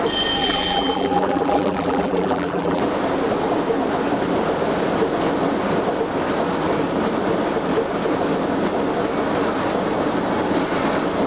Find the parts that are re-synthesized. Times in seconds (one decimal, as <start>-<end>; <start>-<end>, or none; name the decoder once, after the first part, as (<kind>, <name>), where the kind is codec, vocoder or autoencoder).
0.4-2.8 (vocoder, BigVGAN v2)